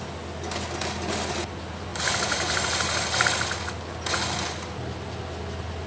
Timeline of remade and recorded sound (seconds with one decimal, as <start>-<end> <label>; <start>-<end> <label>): 0.0-5.9 recorded